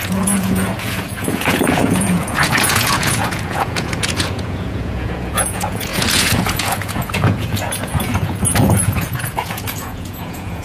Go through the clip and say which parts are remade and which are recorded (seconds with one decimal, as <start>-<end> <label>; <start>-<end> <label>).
0.0-10.6 remade